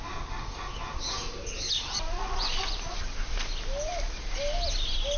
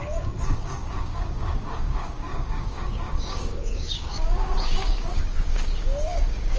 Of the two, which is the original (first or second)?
first